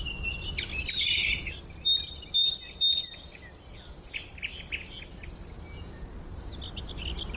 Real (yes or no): yes